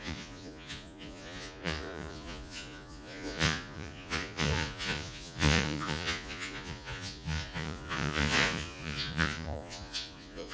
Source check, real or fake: fake